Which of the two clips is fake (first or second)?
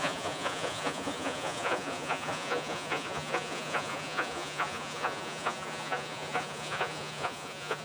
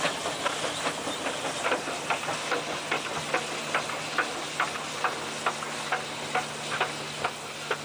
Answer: first